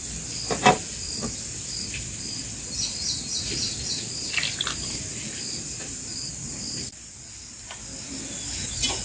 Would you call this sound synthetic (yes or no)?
no